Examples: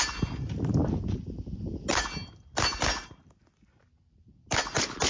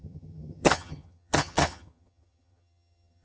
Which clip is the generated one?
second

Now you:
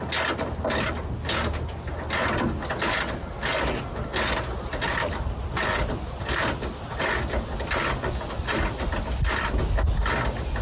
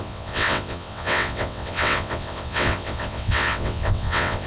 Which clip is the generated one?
second